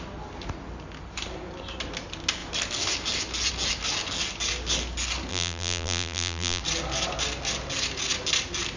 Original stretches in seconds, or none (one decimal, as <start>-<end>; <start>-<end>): 0.0-5.3; 6.6-8.8